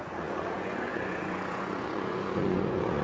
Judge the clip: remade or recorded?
remade